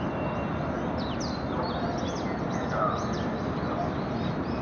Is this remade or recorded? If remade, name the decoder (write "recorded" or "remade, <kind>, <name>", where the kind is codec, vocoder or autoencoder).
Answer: recorded